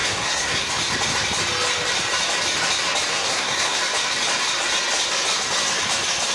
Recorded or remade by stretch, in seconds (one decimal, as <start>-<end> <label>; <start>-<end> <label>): 0.0-0.7 remade; 0.7-3.1 recorded; 3.1-3.8 remade; 3.8-6.3 recorded